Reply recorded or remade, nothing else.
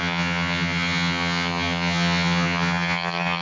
remade